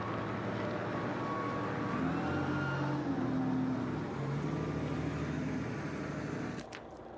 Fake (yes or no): no